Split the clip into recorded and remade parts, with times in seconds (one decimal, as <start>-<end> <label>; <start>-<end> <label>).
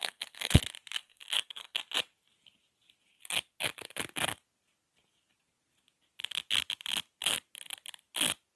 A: 0.0-0.6 remade; 0.6-1.0 recorded; 1.0-1.8 remade; 1.8-8.6 recorded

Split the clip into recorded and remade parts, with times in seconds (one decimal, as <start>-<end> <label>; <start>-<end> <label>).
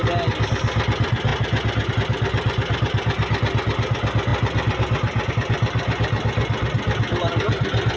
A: 0.0-8.0 recorded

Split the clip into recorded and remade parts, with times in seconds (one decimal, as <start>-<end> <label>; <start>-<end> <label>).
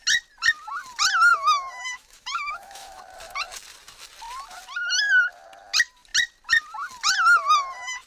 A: 0.0-1.3 recorded; 1.3-3.0 remade; 3.0-8.1 recorded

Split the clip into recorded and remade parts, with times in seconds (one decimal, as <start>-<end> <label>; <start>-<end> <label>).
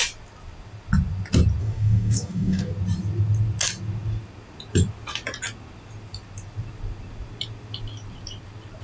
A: 0.0-1.6 recorded; 1.6-2.7 remade; 2.7-8.8 recorded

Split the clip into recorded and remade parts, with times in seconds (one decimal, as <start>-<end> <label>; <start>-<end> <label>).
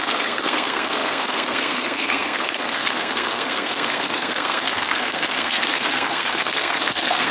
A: 0.0-7.3 remade